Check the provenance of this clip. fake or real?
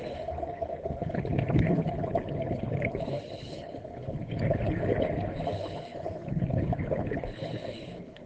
fake